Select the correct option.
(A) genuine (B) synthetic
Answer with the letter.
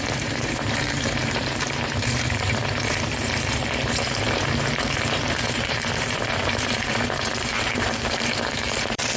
B